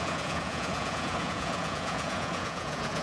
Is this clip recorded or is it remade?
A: remade